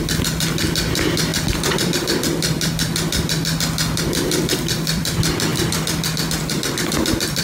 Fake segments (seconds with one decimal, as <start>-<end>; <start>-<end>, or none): none